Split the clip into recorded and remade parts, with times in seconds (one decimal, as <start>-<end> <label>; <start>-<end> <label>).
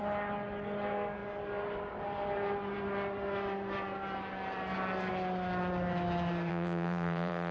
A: 0.0-6.5 recorded; 6.5-7.5 remade